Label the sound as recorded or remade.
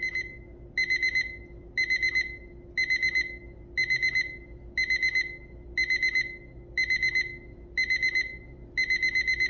recorded